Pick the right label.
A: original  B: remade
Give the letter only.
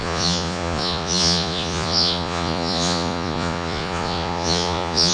B